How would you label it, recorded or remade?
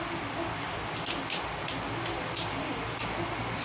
recorded